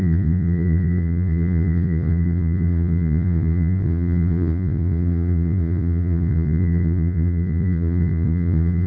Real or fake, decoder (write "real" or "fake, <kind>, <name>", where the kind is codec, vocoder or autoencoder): fake, vocoder, Vocos